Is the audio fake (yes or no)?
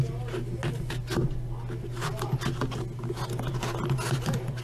no